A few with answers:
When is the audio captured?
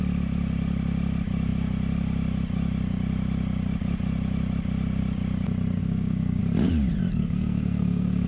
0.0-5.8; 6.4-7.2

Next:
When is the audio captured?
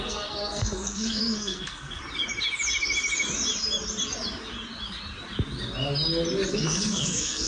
2.0-6.5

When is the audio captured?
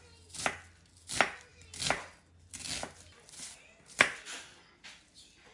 0.0-5.5